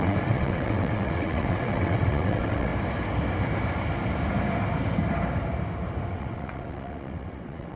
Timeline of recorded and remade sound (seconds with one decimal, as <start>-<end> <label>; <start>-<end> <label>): 0.0-2.7 remade; 2.7-6.1 recorded; 6.1-7.8 remade